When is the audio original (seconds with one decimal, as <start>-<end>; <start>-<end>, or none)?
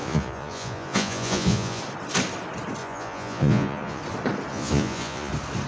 1.8-2.8; 4.0-4.5; 5.3-5.7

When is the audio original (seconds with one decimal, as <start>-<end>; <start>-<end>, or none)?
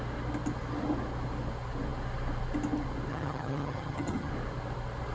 0.0-3.1; 4.3-5.1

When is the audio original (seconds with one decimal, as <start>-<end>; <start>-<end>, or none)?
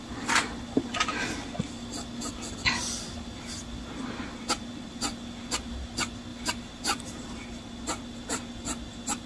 0.0-6.3; 7.3-9.3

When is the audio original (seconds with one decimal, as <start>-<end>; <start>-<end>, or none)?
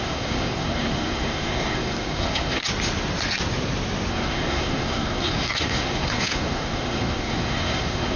2.6-4.1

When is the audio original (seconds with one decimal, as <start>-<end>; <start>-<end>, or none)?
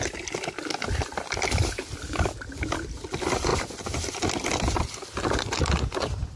0.0-6.4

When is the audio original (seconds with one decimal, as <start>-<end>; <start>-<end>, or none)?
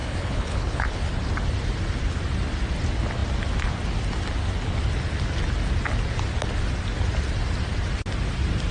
1.1-8.7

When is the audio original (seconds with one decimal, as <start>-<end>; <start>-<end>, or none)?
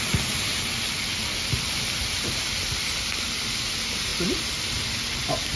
0.0-5.6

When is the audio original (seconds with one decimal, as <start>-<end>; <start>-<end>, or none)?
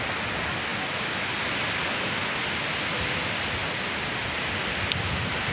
0.0-5.5